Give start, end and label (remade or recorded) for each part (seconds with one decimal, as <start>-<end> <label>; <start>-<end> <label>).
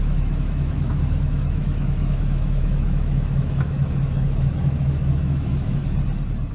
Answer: 0.0-5.8 remade; 5.8-6.5 recorded